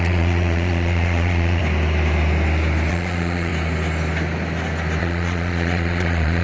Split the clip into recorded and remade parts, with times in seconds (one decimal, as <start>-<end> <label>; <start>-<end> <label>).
0.0-1.6 remade; 1.6-2.9 recorded; 2.9-3.5 remade; 3.5-5.0 recorded; 5.0-6.4 remade

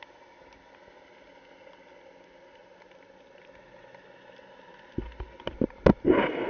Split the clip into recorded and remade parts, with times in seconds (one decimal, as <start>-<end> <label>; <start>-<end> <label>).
0.0-6.5 recorded

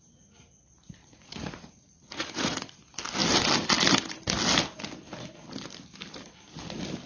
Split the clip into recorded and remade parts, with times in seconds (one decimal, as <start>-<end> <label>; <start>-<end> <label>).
0.0-1.0 recorded; 1.0-2.8 remade; 2.8-7.1 recorded

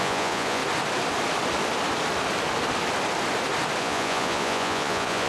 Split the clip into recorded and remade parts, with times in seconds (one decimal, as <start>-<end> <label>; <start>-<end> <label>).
0.0-0.6 remade; 0.6-3.8 recorded; 3.8-5.3 remade

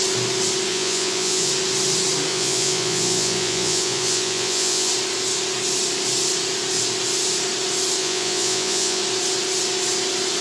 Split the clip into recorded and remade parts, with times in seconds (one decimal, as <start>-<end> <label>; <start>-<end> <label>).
0.0-0.7 recorded; 0.7-1.5 remade; 1.5-2.3 recorded; 2.3-4.9 remade; 4.9-8.0 recorded; 8.0-9.0 remade; 9.0-10.4 recorded